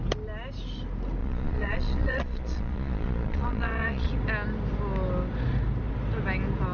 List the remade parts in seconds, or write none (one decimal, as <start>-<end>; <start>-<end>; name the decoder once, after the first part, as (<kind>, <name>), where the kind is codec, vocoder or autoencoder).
1.2-4.1 (vocoder, Vocos)